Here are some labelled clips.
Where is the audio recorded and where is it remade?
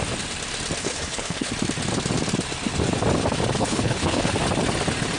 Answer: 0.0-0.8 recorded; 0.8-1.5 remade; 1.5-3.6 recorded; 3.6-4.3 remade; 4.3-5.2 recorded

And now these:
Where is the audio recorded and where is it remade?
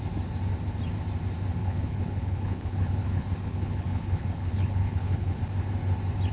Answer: 0.0-1.6 recorded; 1.6-5.4 remade; 5.4-6.3 recorded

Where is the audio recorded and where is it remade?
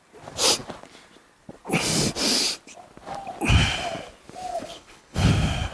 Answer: 0.0-4.5 recorded; 4.5-5.3 remade; 5.3-5.7 recorded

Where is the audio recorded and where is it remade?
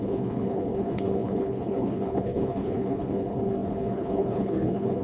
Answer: 0.0-5.0 remade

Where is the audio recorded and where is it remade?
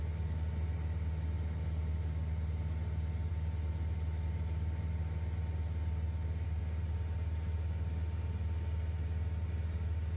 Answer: 0.0-10.2 recorded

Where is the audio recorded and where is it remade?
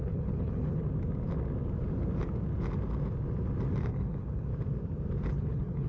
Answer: 0.0-0.8 remade; 0.8-3.9 recorded; 3.9-4.5 remade; 4.5-5.3 recorded; 5.3-5.9 remade